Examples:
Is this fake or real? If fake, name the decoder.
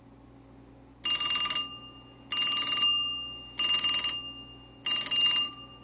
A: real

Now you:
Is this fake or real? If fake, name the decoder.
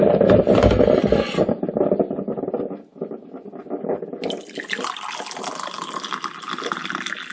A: real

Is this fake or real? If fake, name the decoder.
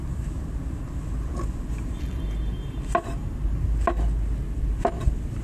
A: real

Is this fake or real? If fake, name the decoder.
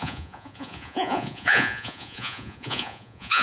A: fake, vocoder, Vocos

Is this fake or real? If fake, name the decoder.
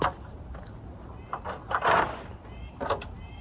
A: real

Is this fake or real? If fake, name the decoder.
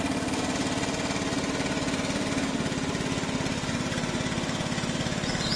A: real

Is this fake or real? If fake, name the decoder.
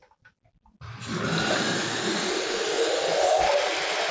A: real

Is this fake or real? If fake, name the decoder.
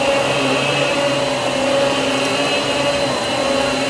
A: real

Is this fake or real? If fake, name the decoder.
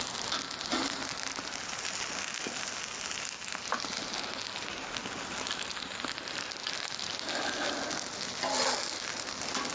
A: real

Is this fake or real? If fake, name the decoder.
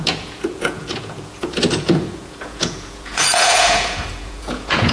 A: fake, vocoder, Vocos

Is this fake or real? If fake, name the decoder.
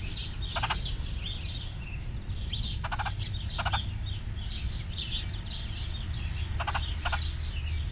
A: real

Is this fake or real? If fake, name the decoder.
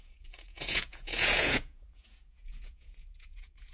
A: fake, vocoder, Vocos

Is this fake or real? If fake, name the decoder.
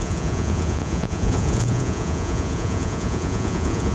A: fake, vocoder, Vocos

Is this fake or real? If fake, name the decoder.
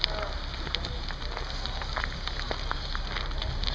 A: real